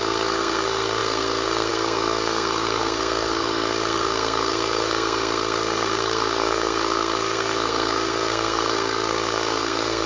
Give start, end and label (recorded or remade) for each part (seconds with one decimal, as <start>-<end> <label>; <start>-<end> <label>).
0.0-10.1 remade